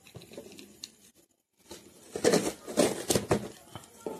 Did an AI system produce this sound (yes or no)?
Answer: no